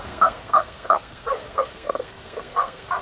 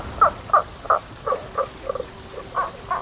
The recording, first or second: second